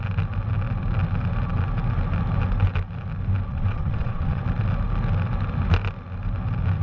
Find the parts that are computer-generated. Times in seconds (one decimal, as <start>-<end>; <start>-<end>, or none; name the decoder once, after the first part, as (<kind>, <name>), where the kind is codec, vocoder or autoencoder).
3.5-4.4 (vocoder, WaveNeXt)